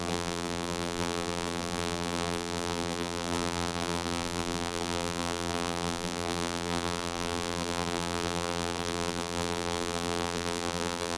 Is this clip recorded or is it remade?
remade